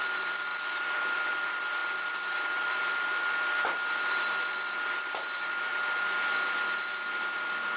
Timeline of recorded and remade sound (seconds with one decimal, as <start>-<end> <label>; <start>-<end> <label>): 0.0-5.7 remade; 5.7-7.8 recorded